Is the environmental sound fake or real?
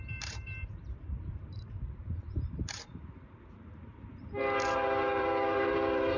fake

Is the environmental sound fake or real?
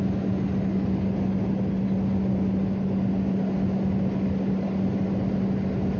real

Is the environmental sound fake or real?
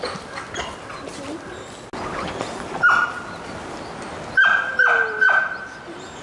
real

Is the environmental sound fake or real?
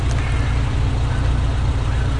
real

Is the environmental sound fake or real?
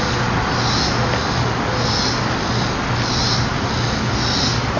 real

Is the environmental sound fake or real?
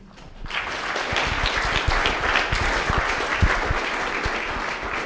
real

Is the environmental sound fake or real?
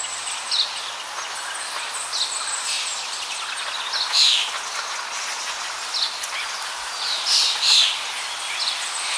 real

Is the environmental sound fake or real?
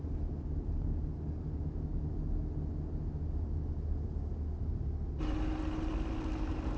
real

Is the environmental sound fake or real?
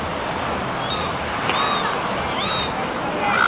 real